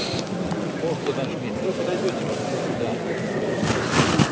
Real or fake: real